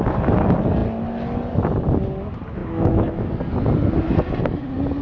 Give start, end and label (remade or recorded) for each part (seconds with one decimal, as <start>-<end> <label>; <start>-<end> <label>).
0.0-2.6 recorded; 2.6-3.3 remade; 3.3-5.0 recorded